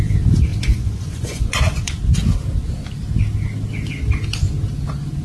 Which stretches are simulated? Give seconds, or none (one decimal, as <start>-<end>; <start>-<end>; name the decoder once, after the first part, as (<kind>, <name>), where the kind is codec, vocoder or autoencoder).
0.5-2.0 (vocoder, Vocos)